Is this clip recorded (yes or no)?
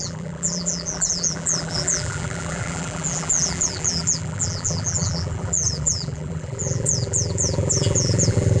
no